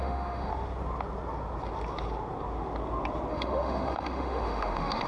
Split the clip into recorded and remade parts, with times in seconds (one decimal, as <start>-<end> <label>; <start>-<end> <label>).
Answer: 0.0-0.5 remade; 0.5-3.3 recorded; 3.3-5.1 remade